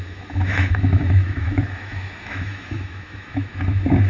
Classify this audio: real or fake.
fake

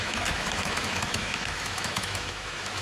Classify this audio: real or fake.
fake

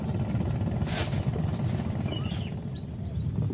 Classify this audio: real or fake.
real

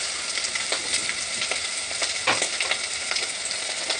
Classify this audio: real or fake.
real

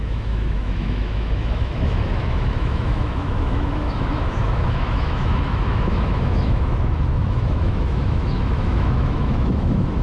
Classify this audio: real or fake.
fake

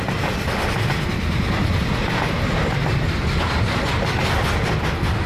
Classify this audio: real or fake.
real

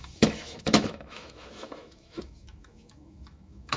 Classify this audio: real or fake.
fake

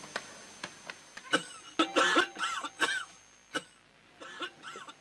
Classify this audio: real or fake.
real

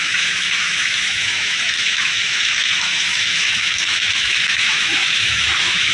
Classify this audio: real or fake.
fake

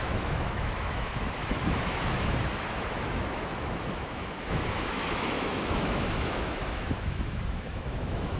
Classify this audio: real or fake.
fake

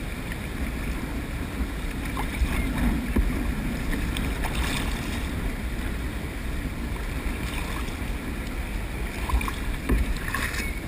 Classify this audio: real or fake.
real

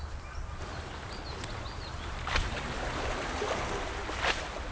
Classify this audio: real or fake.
real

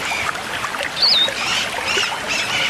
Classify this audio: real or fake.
real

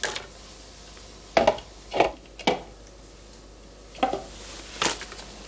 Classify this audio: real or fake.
real